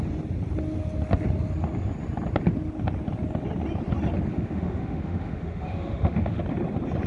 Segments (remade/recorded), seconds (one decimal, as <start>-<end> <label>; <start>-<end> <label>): 0.0-4.3 recorded; 4.3-6.4 remade; 6.4-7.1 recorded